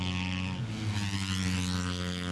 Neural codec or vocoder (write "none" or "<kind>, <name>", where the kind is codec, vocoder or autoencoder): none